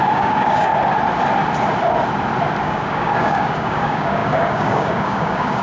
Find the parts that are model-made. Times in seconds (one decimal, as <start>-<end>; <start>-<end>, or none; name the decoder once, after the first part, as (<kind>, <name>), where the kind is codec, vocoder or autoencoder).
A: 0.0-0.7 (codec, DAC); 2.6-5.6